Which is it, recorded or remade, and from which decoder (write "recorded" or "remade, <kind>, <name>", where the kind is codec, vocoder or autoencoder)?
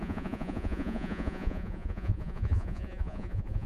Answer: remade, vocoder, Vocos